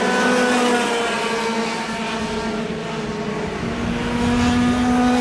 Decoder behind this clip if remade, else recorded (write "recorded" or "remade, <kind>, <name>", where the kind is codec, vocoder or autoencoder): recorded